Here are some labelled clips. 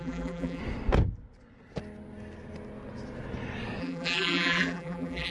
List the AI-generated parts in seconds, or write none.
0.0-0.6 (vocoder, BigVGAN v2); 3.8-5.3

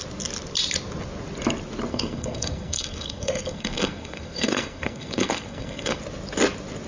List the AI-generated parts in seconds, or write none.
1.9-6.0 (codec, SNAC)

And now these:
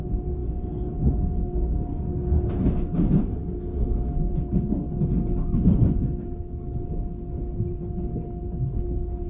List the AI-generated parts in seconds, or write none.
none